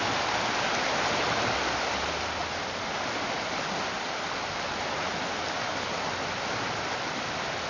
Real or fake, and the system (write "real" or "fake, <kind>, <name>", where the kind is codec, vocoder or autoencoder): real